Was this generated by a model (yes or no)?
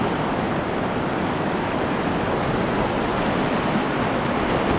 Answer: no